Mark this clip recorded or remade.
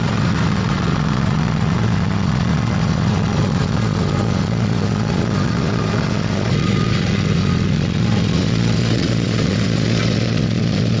remade